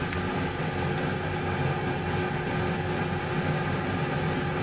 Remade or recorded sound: recorded